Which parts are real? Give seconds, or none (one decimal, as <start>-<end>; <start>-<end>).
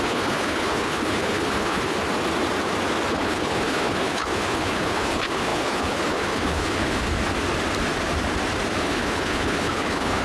2.0-3.1; 7.1-8.8